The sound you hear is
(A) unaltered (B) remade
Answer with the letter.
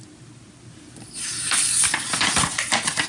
A